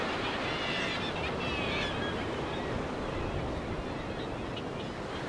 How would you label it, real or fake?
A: real